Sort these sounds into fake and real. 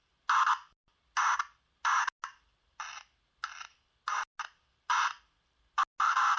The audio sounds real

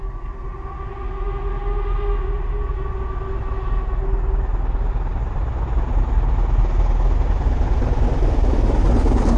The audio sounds real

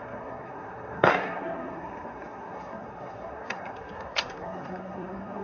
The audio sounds fake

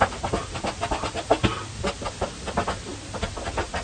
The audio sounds real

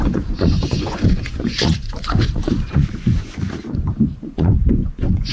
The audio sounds fake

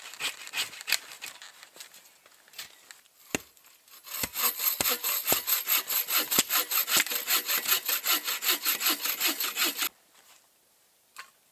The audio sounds real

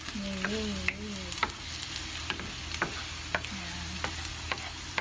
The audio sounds real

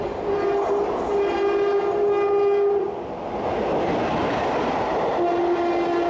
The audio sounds real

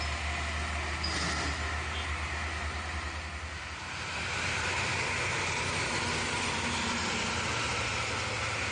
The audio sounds real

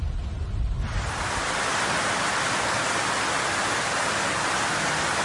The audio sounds real